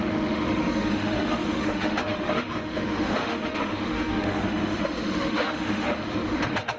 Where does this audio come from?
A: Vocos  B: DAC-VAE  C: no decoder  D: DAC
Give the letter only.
B